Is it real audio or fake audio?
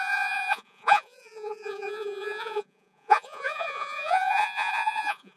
fake